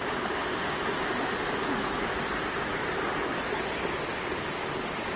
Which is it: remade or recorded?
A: recorded